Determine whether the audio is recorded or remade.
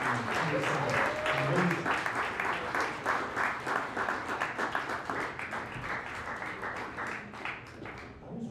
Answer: recorded